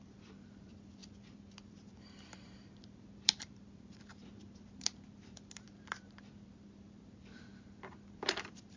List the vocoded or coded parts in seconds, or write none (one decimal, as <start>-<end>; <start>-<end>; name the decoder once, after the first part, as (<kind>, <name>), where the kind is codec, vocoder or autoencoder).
0.0-8.8 (vocoder, BigVGAN v2)